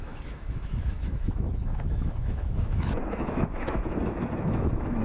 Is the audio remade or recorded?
remade